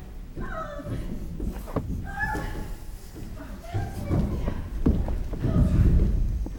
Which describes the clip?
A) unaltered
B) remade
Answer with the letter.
A